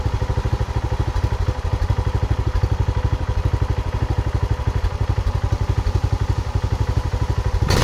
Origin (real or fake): real